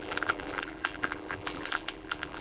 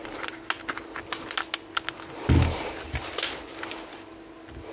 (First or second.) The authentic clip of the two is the second